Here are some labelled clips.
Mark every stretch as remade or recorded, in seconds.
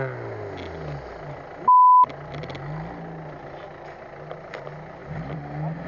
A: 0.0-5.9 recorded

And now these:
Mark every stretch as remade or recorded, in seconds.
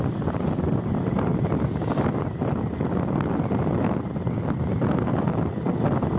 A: 0.0-6.2 recorded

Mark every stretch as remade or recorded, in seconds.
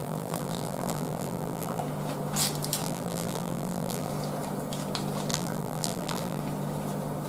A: 0.0-1.8 remade; 1.8-2.8 recorded; 2.8-4.1 remade; 4.1-5.3 recorded; 5.3-6.4 remade; 6.4-7.3 recorded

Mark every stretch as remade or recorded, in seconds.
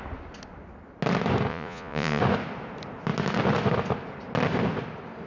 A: 0.0-1.5 recorded; 1.5-2.2 remade; 2.2-5.3 recorded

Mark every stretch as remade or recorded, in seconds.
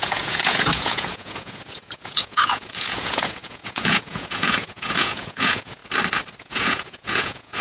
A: 0.0-5.8 remade; 5.8-6.4 recorded; 6.4-7.6 remade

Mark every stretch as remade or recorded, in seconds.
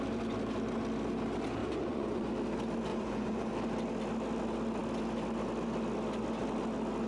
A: 0.0-1.6 recorded; 1.6-2.3 remade; 2.3-2.9 recorded; 2.9-3.5 remade; 3.5-7.1 recorded